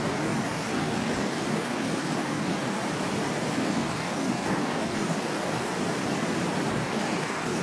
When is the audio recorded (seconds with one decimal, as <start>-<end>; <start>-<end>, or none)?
2.8-3.5; 5.7-6.7